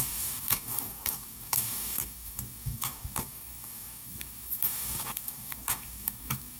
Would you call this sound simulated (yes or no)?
yes